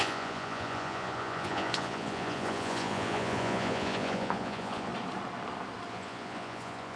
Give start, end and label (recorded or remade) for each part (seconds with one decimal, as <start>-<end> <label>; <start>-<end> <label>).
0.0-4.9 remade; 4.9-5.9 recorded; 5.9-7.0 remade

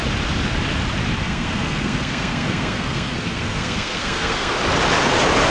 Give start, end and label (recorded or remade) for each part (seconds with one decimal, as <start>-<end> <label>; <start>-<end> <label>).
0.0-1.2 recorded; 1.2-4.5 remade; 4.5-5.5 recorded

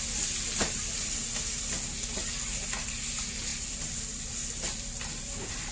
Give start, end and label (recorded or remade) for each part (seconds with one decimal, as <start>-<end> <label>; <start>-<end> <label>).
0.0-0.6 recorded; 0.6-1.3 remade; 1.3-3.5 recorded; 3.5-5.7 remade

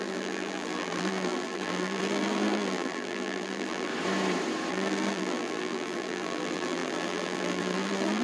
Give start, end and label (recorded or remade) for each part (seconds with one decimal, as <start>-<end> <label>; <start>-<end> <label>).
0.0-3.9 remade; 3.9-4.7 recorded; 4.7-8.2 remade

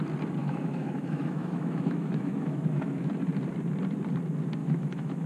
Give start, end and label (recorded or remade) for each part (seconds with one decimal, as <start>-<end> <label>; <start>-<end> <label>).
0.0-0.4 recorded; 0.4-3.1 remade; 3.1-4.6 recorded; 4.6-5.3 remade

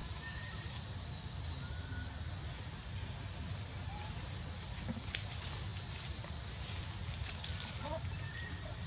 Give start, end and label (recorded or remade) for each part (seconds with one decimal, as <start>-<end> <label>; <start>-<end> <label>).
0.0-0.7 remade; 0.7-8.9 recorded

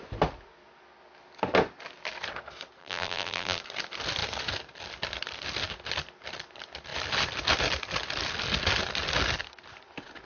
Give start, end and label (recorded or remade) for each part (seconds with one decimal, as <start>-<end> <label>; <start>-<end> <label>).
0.0-2.8 recorded; 2.8-3.6 remade; 3.6-10.3 recorded

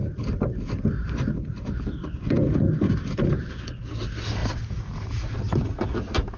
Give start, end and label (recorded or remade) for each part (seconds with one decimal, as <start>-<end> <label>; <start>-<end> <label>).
0.0-3.8 remade; 3.8-4.4 recorded; 4.4-5.4 remade; 5.4-6.4 recorded